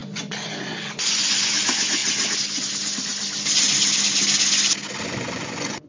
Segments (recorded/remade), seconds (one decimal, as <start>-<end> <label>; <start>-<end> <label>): 0.0-2.0 remade; 2.0-5.0 recorded; 5.0-5.9 remade